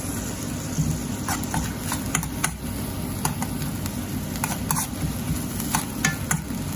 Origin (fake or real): real